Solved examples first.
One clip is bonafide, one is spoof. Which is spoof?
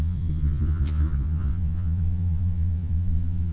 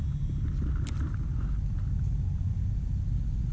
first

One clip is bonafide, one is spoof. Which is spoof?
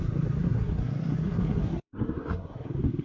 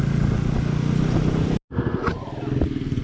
first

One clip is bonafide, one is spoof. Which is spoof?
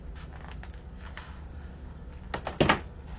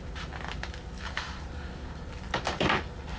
second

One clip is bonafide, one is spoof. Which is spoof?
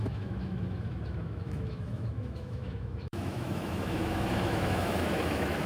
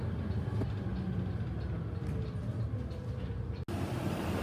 first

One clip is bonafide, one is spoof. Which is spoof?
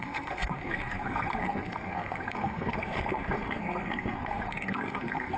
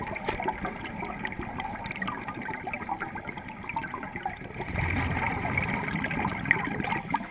first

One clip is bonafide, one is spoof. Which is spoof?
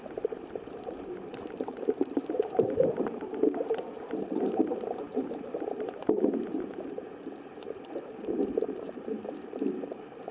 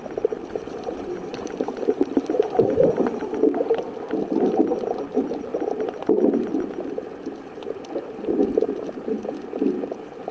first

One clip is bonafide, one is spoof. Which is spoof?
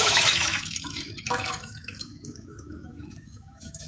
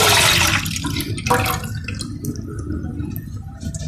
first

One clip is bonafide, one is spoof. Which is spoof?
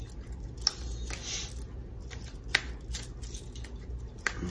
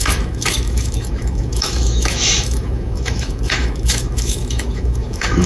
second